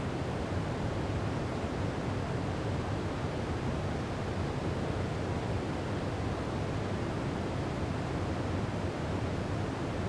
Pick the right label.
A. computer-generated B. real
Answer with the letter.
B